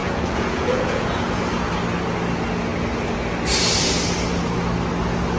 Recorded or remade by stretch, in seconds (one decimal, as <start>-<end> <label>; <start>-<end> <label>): 0.0-1.7 remade; 1.7-5.4 recorded